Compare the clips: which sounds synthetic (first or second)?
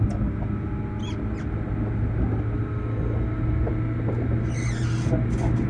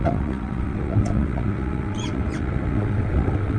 second